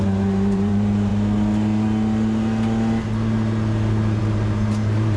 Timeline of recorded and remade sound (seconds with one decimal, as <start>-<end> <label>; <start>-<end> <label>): 0.0-1.1 remade; 1.1-4.2 recorded; 4.2-5.2 remade